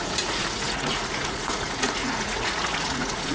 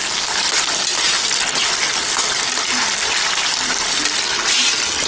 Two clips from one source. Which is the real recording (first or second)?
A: second